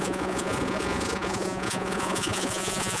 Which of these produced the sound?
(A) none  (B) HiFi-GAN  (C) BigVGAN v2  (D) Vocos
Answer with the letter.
D